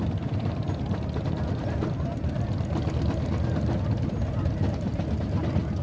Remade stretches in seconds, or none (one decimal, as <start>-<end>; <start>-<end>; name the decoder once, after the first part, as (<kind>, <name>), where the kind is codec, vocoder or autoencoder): none